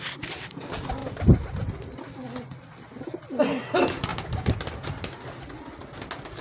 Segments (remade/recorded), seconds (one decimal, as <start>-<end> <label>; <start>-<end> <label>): 0.0-6.4 recorded

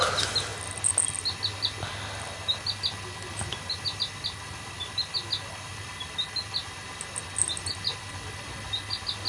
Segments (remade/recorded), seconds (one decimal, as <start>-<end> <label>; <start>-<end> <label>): 0.0-9.3 recorded

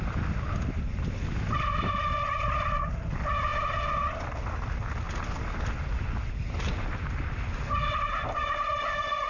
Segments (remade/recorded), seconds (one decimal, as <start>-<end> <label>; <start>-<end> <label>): 0.0-9.3 recorded

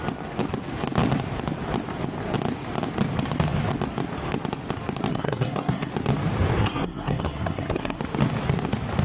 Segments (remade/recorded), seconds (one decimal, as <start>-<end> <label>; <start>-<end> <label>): 0.0-5.1 recorded; 5.1-5.9 remade; 5.9-6.6 recorded; 6.6-8.0 remade; 8.0-9.0 recorded